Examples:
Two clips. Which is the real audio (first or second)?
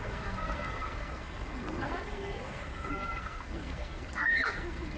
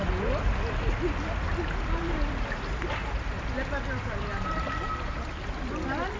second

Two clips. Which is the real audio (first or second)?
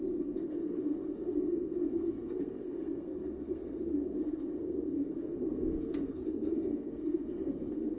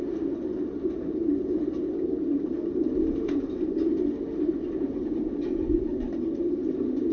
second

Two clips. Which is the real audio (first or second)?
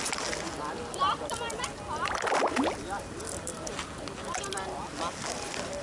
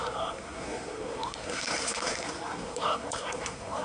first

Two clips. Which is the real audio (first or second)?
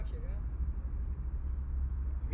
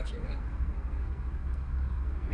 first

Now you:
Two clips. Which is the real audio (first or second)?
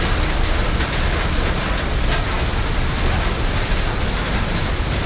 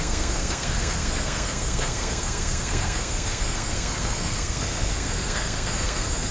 first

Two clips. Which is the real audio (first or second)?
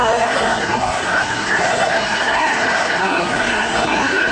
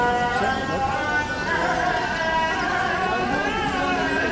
second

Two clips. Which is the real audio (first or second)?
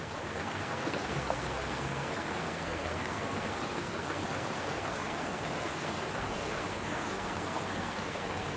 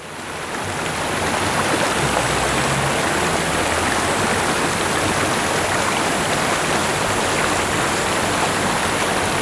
second